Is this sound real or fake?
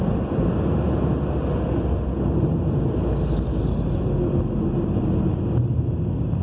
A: real